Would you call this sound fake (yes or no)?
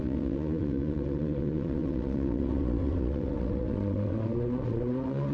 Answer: yes